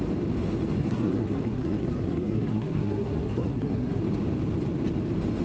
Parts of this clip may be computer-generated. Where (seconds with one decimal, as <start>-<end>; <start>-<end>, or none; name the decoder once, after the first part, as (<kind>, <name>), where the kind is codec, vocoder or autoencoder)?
0.8-4.0 (codec, SNAC)